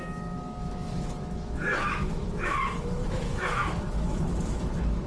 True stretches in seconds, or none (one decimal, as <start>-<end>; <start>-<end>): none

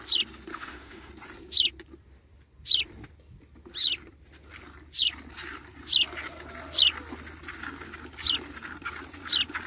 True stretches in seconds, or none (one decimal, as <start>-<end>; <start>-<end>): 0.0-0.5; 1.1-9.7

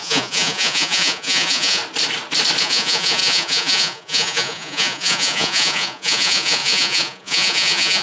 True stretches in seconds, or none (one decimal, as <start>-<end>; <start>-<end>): 1.8-2.6

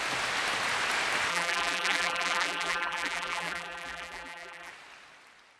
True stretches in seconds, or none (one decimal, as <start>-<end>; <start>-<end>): 0.0-1.3; 4.7-5.6

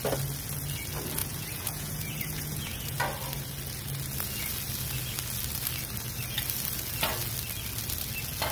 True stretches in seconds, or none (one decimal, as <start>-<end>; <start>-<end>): 0.0-1.2; 3.0-8.5